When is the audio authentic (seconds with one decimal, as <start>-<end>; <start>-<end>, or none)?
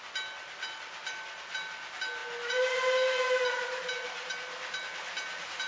0.0-5.7